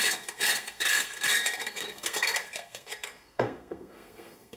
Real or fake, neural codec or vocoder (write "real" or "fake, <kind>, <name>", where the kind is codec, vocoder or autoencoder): fake, codec, SNAC